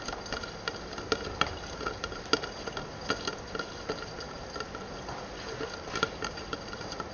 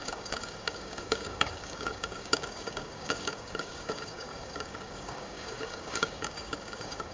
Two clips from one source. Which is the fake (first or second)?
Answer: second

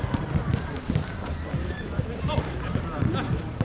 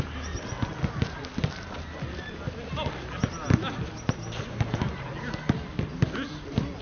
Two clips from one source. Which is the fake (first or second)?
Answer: first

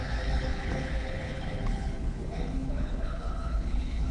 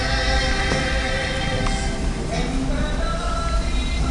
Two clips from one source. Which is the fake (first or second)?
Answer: first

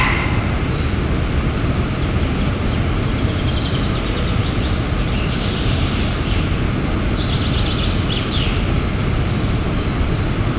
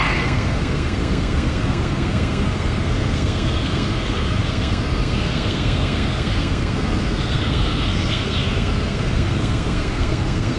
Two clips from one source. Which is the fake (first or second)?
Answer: second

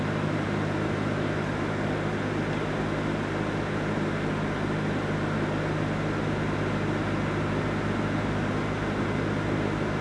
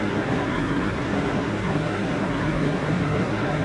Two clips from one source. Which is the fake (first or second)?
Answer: second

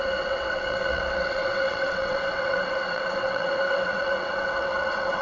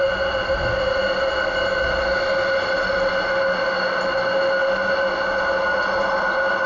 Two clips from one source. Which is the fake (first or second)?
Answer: first